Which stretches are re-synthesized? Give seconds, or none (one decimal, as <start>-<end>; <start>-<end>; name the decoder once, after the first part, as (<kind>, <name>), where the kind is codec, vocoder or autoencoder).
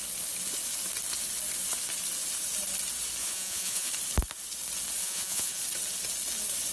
3.2-3.9 (vocoder, Vocos); 5.0-5.6